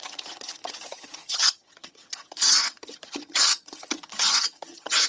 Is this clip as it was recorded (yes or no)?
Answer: no